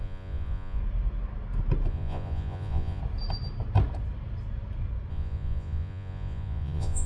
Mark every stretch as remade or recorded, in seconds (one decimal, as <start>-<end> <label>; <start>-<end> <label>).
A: 0.0-0.8 remade; 0.8-1.9 recorded; 1.9-3.0 remade; 3.0-5.1 recorded; 5.1-7.1 remade